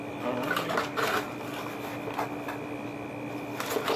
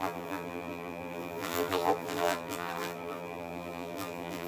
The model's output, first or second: second